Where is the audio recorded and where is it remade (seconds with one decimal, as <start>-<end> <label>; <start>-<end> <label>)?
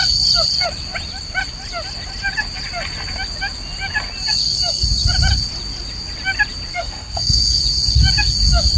0.0-6.7 recorded; 6.7-7.6 remade; 7.6-8.8 recorded